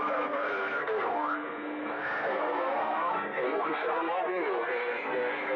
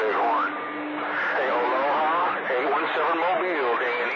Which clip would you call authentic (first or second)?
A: second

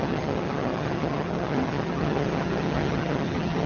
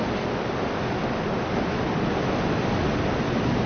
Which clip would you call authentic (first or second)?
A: second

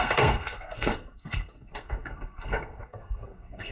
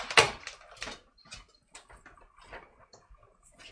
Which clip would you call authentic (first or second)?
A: second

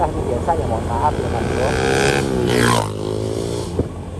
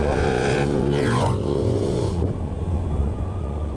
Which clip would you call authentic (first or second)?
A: first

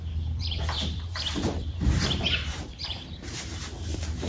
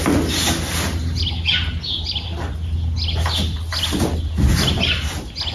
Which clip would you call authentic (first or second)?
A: second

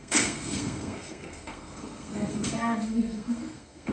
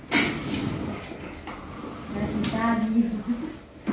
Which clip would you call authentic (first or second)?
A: second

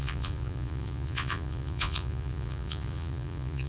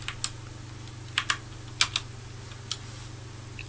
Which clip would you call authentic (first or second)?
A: second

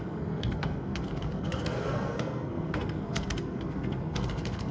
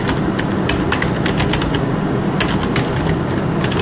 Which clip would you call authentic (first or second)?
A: second